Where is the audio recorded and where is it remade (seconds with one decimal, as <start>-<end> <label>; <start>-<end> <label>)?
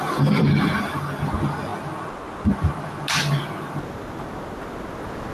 0.0-5.3 recorded